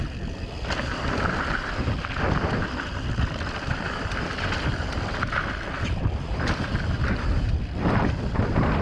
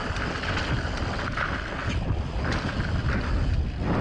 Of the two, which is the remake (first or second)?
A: first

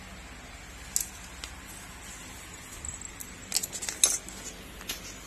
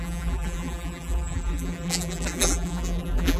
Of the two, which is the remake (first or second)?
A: second